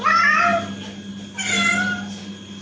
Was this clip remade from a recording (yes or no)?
no